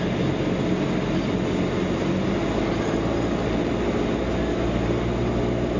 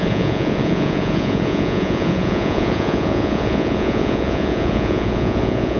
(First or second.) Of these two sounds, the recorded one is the first